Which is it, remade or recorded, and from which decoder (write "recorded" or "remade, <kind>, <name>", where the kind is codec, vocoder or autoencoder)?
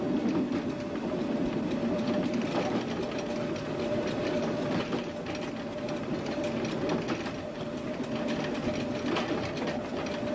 recorded